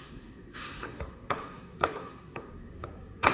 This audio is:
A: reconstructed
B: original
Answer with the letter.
A